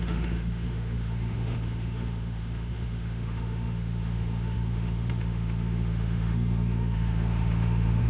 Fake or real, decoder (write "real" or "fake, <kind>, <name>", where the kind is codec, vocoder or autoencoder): fake, autoencoder, DAC-VAE